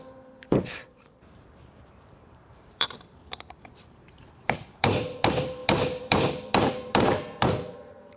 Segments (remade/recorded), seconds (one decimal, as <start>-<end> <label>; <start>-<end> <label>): 0.0-8.2 remade